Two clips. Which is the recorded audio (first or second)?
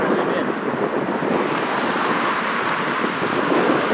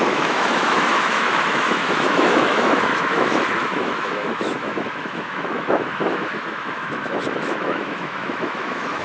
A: first